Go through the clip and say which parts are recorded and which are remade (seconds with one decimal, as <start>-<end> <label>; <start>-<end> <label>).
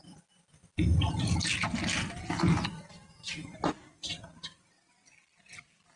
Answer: 0.0-6.0 recorded